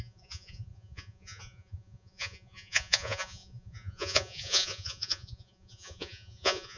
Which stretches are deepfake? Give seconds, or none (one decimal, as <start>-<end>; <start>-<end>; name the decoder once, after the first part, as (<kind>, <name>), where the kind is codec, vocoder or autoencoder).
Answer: 0.0-6.8 (vocoder, Vocos)